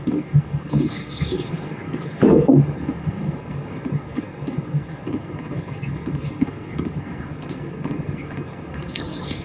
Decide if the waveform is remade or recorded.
remade